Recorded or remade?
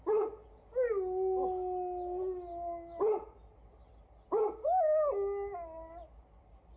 recorded